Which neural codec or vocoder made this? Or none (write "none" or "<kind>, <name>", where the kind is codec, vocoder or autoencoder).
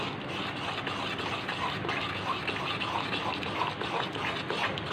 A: none